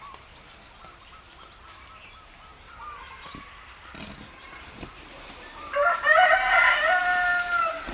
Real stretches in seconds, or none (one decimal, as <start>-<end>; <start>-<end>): 0.0-2.5; 6.5-7.0